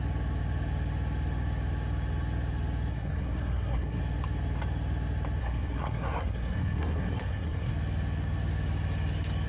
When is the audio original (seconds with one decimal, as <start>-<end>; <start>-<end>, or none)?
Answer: 0.0-2.9; 4.0-5.4; 7.7-9.5